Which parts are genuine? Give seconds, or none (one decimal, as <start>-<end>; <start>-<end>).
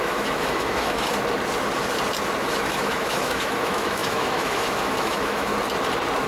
1.1-2.4; 5.5-6.3